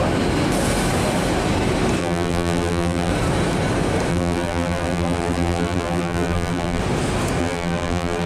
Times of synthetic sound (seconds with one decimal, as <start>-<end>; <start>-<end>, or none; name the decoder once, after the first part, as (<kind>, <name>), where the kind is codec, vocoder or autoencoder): 2.0-3.1 (vocoder, BigVGAN v2); 4.1-6.8; 7.4-8.3